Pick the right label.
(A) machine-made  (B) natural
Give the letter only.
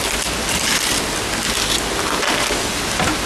B